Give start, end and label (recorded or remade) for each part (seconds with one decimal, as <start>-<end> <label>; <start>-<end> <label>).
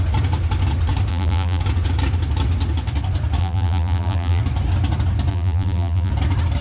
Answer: 0.0-1.1 recorded; 1.1-1.6 remade; 1.6-3.4 recorded; 3.4-4.4 remade; 4.4-5.3 recorded; 5.3-6.1 remade; 6.1-6.6 recorded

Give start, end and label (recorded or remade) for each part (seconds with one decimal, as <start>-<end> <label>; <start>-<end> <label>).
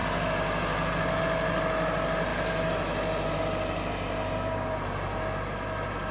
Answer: 0.0-6.1 recorded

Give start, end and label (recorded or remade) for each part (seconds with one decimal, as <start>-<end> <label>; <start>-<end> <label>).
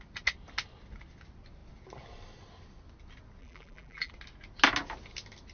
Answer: 0.0-3.4 recorded; 3.4-4.1 remade; 4.1-5.5 recorded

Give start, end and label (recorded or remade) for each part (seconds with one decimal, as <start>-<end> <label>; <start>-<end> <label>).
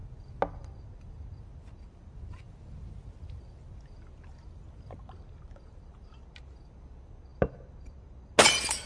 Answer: 0.0-8.9 recorded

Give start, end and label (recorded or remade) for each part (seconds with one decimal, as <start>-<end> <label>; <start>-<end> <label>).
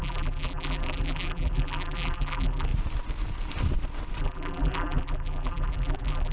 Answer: 0.0-2.7 remade; 2.7-4.2 recorded; 4.2-6.3 remade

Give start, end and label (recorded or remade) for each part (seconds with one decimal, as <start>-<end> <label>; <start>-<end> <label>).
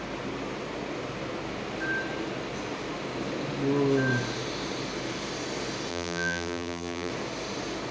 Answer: 0.0-5.9 recorded; 5.9-7.1 remade; 7.1-7.9 recorded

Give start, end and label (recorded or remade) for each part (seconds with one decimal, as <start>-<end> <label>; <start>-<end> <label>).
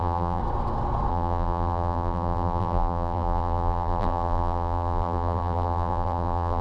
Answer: 0.0-0.4 remade; 0.4-1.1 recorded; 1.1-6.6 remade